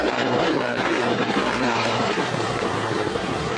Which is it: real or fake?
fake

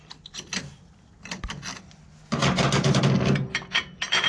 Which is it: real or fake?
real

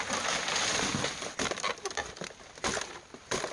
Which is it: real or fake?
real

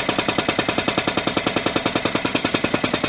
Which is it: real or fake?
real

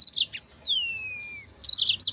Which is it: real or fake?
real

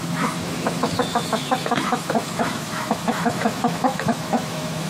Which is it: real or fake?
fake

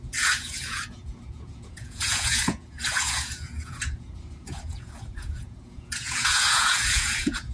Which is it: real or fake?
fake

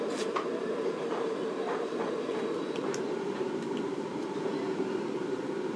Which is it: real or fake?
fake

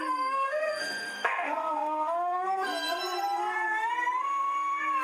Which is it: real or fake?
fake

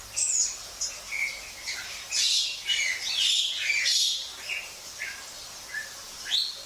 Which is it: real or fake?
fake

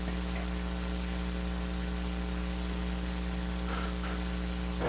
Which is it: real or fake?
real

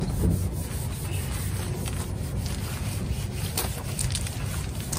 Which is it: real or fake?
real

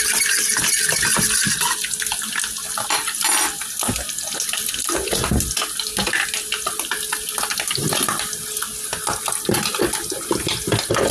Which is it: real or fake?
real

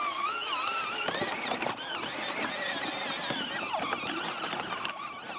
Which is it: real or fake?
real